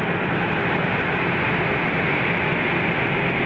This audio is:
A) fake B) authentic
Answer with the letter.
B